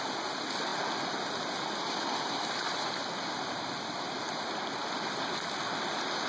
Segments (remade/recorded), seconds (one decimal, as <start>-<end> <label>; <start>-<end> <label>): 0.0-6.3 recorded

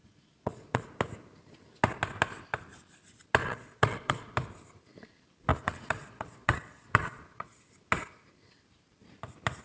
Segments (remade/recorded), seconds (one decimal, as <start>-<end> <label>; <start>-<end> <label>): 0.0-0.9 remade; 0.9-3.4 recorded; 3.4-4.3 remade; 4.3-5.5 recorded; 5.5-7.6 remade; 7.6-9.6 recorded

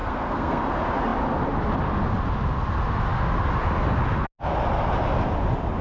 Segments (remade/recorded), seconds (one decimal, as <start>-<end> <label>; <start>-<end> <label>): 0.0-0.6 remade; 0.6-5.8 recorded